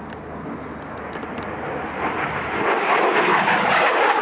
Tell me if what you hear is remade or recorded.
recorded